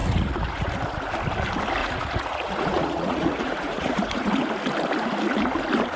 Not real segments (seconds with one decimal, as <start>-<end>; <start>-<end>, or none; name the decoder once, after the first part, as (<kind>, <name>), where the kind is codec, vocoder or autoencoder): 0.0-0.7 (vocoder, Vocos); 1.8-4.3